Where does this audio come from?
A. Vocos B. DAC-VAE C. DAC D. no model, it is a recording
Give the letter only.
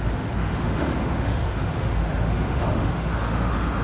B